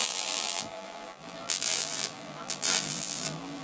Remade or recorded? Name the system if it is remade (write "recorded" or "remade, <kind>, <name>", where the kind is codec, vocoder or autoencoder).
remade, vocoder, BigVGAN v2